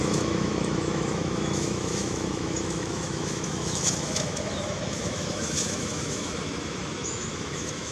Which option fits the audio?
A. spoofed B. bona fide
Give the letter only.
A